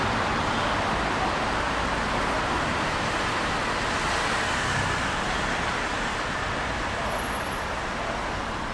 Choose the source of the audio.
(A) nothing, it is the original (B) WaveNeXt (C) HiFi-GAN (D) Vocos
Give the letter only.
A